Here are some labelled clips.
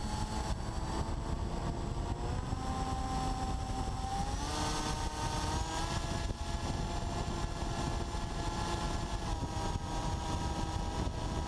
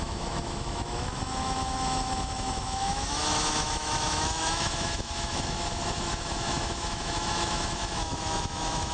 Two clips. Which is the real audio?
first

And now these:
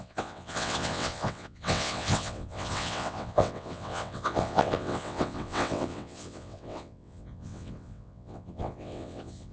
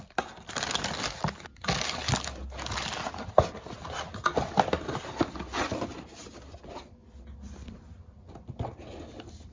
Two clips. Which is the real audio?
second